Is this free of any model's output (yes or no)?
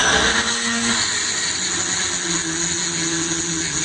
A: yes